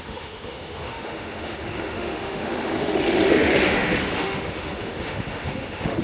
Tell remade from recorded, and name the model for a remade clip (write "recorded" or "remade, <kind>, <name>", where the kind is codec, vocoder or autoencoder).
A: remade, autoencoder, DAC-VAE